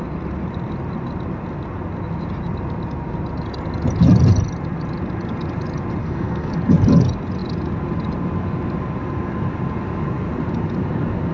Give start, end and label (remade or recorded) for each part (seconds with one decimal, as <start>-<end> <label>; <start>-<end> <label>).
0.0-6.0 recorded; 6.0-6.5 remade; 6.5-11.3 recorded